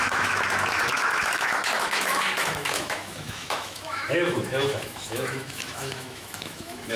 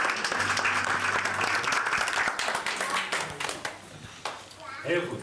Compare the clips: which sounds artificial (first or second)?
first